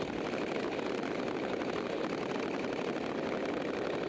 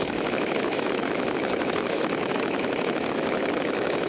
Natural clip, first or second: first